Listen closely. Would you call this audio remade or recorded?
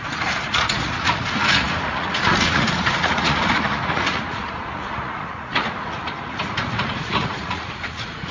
remade